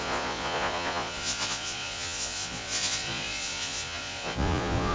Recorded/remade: remade